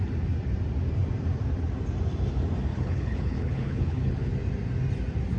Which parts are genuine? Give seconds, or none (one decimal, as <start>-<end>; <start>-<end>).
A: 0.0-2.7; 4.3-5.4